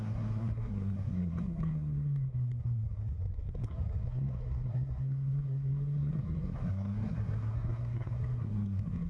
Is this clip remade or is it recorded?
remade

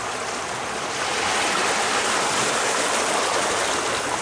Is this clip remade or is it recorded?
recorded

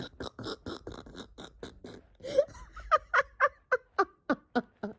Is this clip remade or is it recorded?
recorded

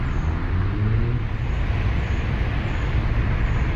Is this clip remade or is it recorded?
recorded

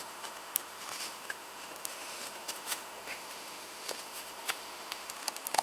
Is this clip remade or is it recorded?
remade